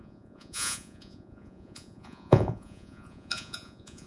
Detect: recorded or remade remade